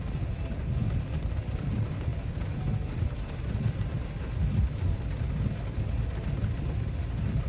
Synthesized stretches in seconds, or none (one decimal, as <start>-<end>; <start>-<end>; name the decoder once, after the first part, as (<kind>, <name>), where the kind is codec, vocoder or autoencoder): none